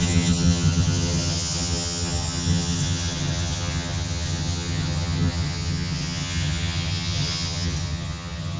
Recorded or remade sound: remade